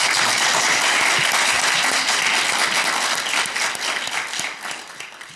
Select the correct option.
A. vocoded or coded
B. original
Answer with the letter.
B